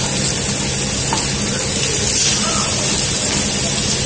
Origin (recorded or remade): recorded